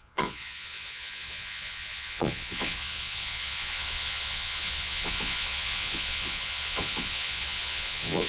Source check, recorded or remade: remade